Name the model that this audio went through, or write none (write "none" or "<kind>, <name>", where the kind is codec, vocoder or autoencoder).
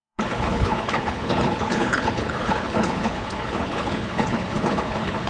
codec, HILCodec